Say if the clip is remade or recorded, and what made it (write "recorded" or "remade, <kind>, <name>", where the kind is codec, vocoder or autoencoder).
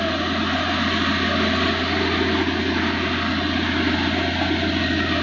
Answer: recorded